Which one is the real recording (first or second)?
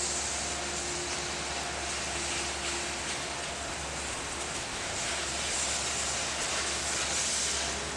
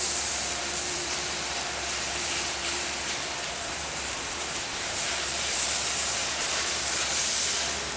first